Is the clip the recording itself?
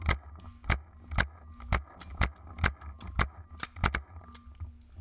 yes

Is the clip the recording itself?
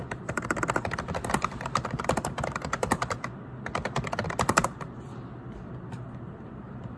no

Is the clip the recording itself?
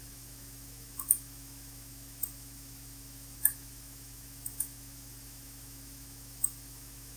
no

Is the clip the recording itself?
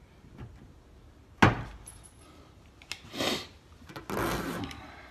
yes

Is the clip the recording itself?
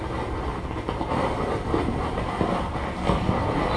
yes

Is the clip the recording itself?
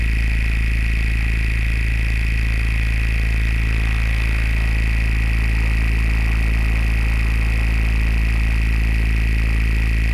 yes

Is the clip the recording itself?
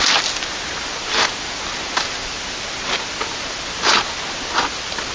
yes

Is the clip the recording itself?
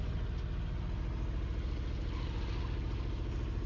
yes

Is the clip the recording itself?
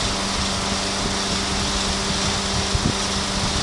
yes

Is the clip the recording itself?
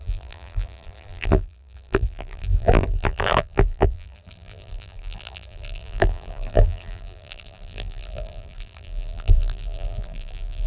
no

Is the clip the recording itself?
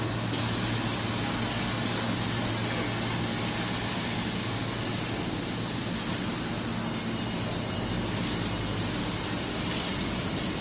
yes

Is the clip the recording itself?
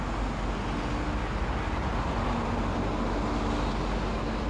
yes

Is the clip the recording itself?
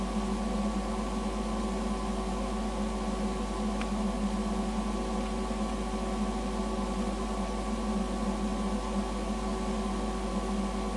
yes